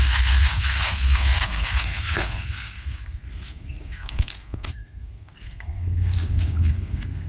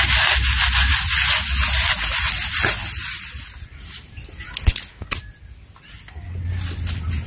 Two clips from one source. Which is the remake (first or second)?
first